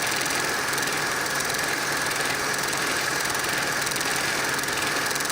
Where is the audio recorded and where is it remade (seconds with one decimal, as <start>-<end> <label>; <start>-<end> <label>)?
0.0-0.9 recorded; 0.9-3.5 remade; 3.5-5.3 recorded